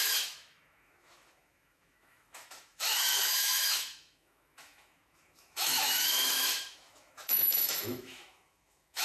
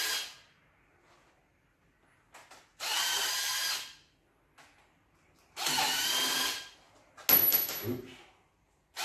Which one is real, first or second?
second